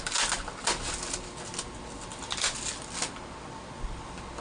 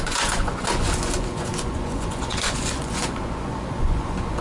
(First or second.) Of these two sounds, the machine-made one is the second